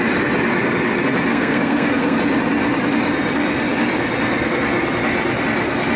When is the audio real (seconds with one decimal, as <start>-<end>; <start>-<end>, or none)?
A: 0.0-1.3; 2.2-6.0